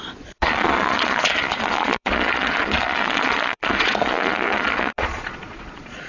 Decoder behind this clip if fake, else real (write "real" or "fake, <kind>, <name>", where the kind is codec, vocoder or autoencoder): fake, vocoder, Vocos